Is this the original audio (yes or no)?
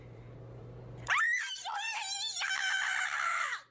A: no